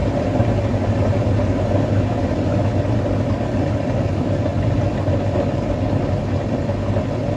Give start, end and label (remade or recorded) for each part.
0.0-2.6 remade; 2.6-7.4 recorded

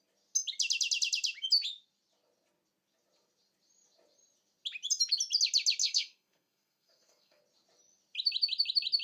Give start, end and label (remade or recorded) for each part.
0.0-5.8 recorded; 5.8-7.4 remade; 7.4-9.0 recorded

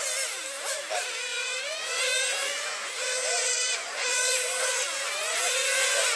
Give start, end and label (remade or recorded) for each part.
0.0-1.3 recorded; 1.3-2.0 remade; 2.0-2.4 recorded; 2.4-6.2 remade

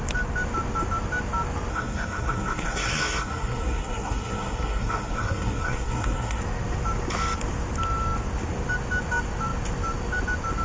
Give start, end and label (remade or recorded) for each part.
0.0-1.7 recorded; 1.7-6.4 remade; 6.4-10.6 recorded